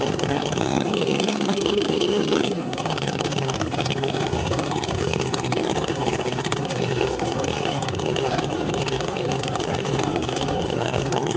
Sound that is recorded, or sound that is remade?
remade